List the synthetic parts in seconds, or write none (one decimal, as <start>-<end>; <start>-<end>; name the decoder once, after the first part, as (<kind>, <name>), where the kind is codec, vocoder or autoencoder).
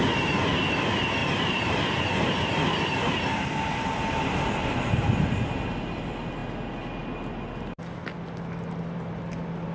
1.2-5.0 (vocoder, BigVGAN v2)